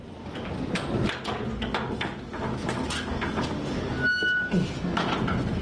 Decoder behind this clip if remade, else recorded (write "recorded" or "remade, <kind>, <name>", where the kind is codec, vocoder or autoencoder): recorded